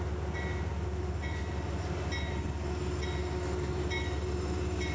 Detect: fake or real real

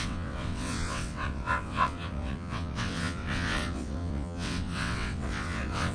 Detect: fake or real fake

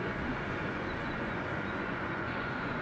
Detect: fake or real fake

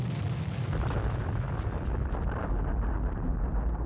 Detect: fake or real real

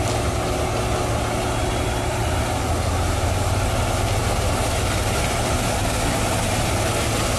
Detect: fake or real real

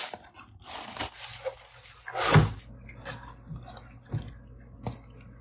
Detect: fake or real real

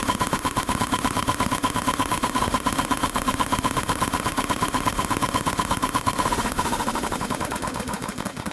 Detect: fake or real fake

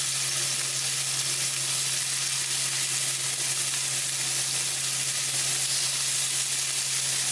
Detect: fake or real real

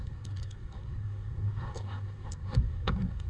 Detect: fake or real fake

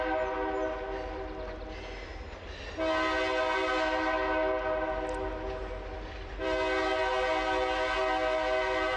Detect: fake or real real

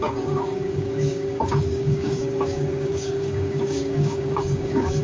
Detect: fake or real fake